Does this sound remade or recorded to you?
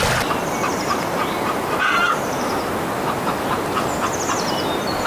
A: recorded